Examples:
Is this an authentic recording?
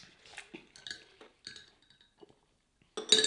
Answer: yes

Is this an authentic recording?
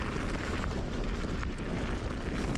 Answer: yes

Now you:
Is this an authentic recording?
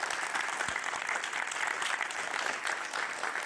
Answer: yes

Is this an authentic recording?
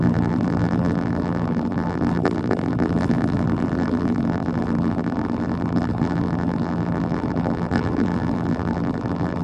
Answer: no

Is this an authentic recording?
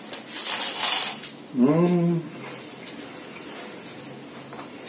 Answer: yes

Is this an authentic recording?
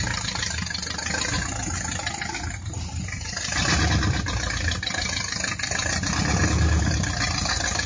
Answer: yes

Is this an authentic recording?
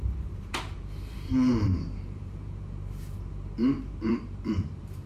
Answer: no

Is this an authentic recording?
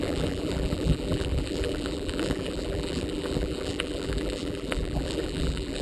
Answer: no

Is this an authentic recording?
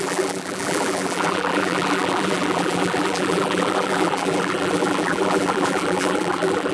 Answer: no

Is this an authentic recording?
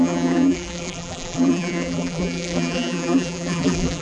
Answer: no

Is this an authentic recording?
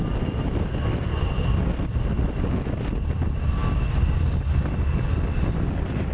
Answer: yes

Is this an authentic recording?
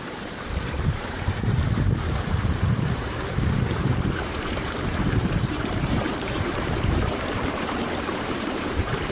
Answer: no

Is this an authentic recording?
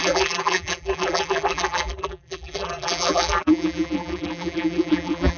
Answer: no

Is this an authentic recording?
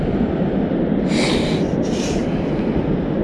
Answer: yes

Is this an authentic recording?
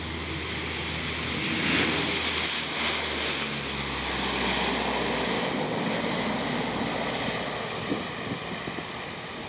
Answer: yes